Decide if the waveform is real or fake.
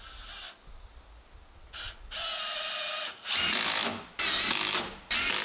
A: real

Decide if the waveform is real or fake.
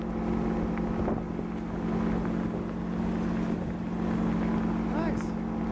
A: real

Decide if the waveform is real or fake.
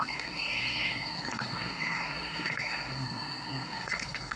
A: fake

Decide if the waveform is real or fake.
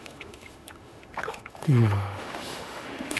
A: fake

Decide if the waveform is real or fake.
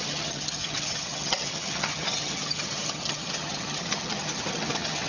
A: fake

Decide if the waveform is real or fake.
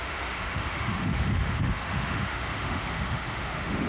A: fake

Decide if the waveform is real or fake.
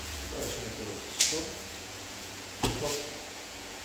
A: fake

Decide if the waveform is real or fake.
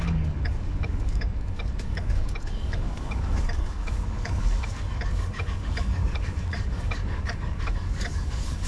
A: fake